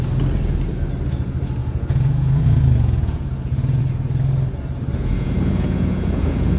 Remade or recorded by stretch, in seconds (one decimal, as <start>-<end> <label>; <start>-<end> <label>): 0.0-1.6 recorded; 1.6-3.8 remade; 3.8-5.0 recorded; 5.0-6.6 remade